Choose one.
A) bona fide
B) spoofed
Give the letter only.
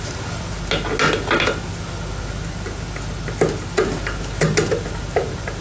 A